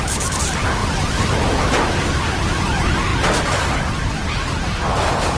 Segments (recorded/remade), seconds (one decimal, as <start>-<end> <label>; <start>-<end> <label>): 0.0-0.8 recorded; 0.8-1.5 remade; 1.5-2.0 recorded; 2.0-2.6 remade; 2.6-5.4 recorded